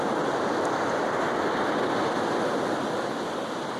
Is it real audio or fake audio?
real